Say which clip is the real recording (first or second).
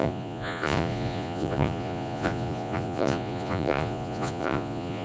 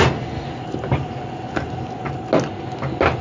second